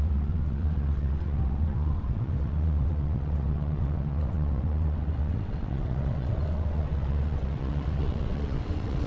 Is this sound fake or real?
fake